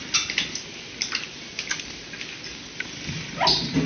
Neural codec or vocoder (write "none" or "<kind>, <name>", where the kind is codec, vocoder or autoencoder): none